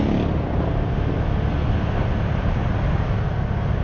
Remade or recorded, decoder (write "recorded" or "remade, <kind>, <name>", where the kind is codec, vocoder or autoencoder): recorded